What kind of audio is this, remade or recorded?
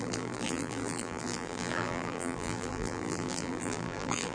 remade